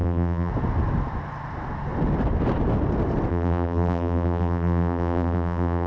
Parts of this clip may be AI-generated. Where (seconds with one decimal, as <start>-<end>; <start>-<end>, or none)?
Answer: 0.0-0.5; 3.3-5.9